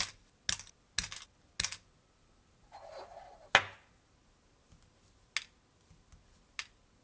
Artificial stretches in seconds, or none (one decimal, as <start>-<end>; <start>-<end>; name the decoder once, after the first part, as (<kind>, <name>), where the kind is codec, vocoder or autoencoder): none